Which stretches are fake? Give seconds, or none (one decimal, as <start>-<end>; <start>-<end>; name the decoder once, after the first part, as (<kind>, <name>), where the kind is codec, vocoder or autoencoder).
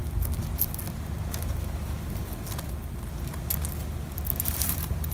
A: 1.3-2.3 (vocoder, BigVGAN v2); 4.4-5.1